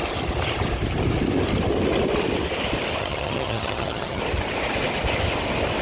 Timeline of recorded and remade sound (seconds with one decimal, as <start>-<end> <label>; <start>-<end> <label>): 0.0-3.0 recorded; 3.0-4.2 remade; 4.2-5.8 recorded